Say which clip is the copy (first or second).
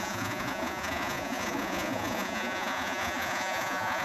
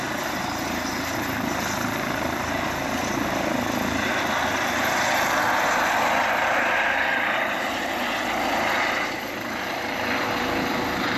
first